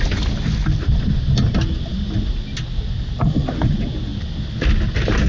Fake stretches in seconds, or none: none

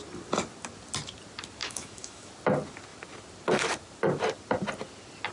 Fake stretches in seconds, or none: 1.6-2.3 (autoencoder, DAC-VAE)

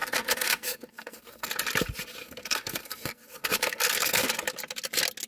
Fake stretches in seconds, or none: 0.0-1.5 (codec, SNAC); 2.2-4.3

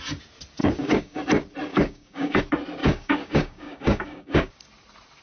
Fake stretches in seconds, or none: 0.6-1.2 (codec, DAC); 1.7-2.4; 2.8-4.5

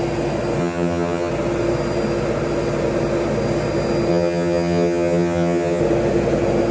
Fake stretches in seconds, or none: 0.6-1.3 (vocoder, HiFi-GAN); 4.1-5.8

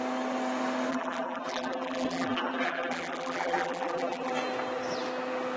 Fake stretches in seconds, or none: 0.9-4.3 (vocoder, BigVGAN v2)

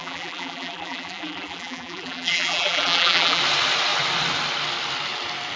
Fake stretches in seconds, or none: 0.0-3.4 (vocoder, BigVGAN v2)

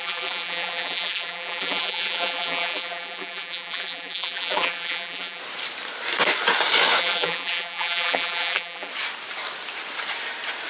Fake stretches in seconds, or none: 0.0-5.4 (vocoder, BigVGAN v2); 7.0-8.9